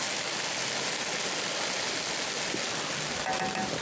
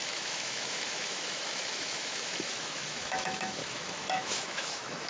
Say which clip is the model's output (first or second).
second